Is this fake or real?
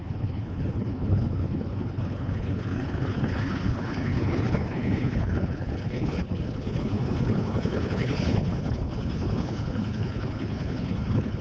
fake